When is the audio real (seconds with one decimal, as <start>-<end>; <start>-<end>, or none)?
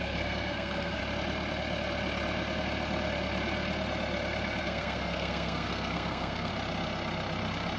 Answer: 1.0-4.6; 6.5-7.8